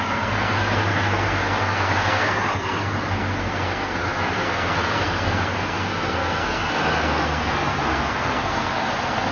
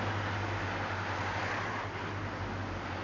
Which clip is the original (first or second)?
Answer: second